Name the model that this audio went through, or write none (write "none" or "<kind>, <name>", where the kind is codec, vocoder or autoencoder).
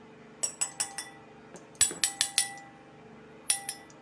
none